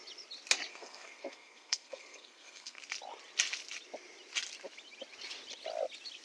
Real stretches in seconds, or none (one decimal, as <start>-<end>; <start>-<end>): 0.0-0.7; 2.8-6.2

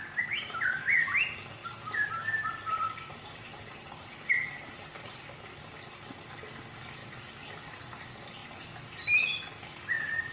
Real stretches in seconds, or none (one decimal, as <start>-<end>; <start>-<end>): 0.0-3.1; 5.2-10.3

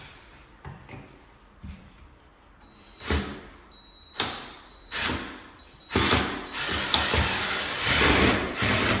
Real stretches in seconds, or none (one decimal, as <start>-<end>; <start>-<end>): 2.3-3.4

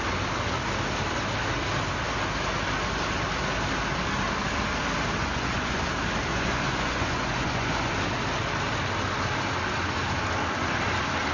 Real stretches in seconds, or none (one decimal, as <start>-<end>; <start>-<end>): 0.0-5.2; 5.8-6.3; 7.9-11.3

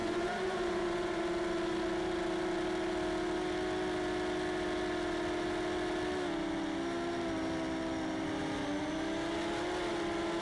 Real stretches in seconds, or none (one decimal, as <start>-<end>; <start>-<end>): 1.2-10.4

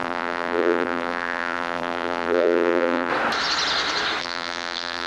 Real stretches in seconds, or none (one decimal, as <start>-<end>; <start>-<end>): 3.1-4.2